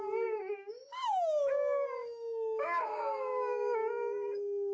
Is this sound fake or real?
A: fake